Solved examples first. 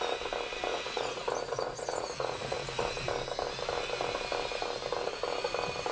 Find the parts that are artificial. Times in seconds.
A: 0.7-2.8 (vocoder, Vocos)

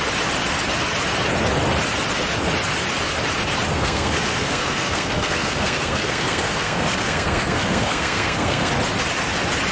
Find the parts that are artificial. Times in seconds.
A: 3.7-8.7 (codec, SNAC)

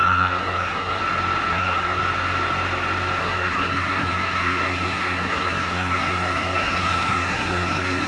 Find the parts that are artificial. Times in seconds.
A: 0.0-1.0 (codec, SNAC); 1.5-2.0; 3.2-8.1

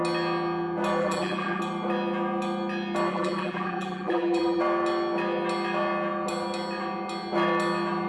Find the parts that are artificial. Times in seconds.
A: 1.0-1.6 (vocoder, BigVGAN v2); 3.1-4.6

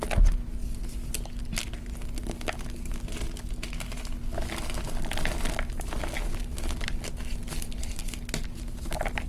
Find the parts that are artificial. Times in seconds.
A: none